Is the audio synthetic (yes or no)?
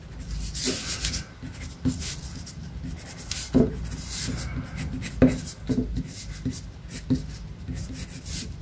no